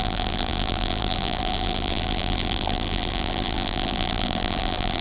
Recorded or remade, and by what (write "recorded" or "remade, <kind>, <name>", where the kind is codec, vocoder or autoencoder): remade, vocoder, BigVGAN v2